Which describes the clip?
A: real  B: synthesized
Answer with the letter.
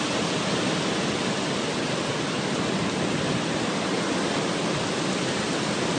A